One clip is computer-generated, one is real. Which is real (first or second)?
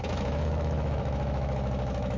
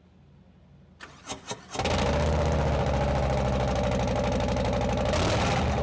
second